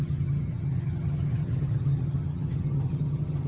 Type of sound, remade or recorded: remade